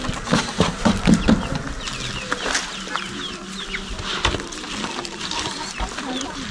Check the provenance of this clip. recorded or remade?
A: recorded